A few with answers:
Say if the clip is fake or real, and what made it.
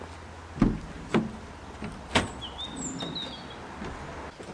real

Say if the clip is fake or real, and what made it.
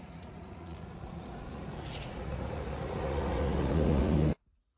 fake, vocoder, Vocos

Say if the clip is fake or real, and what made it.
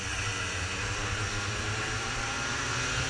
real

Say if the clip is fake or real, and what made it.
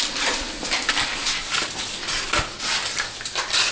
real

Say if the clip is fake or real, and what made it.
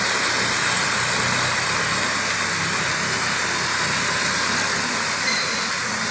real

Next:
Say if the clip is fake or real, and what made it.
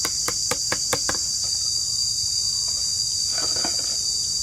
real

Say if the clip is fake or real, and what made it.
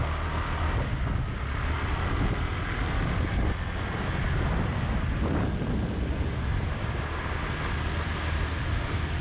real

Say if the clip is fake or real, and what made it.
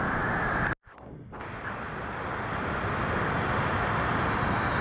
real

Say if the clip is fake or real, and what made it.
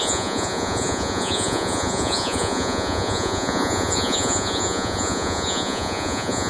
fake, vocoder, Vocos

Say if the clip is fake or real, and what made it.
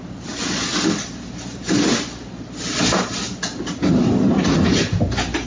real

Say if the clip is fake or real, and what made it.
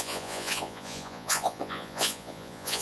fake, vocoder, Vocos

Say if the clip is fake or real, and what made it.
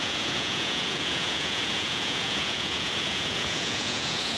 fake, vocoder, Vocos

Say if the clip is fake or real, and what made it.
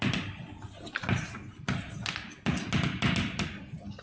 real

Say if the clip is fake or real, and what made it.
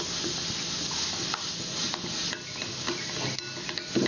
real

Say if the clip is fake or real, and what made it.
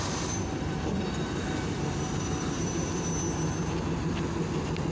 real